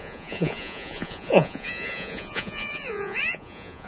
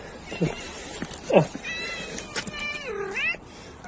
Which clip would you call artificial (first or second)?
first